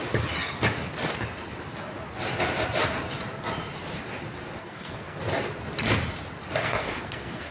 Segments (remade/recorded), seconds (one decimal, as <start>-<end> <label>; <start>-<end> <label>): 0.0-4.6 recorded; 4.6-5.2 remade; 5.2-6.6 recorded; 6.6-7.5 remade